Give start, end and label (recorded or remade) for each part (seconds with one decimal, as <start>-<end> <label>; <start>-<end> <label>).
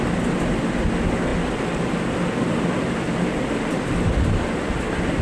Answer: 0.0-5.2 recorded